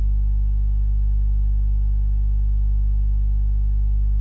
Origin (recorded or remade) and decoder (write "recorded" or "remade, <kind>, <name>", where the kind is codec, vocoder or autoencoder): recorded